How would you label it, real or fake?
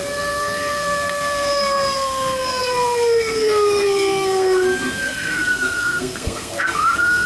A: fake